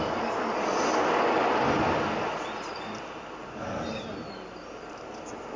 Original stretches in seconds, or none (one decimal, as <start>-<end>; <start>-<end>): 0.0-5.6